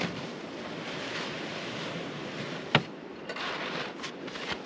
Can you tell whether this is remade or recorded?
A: recorded